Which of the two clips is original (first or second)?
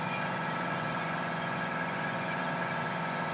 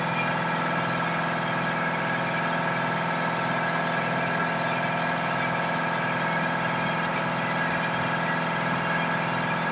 second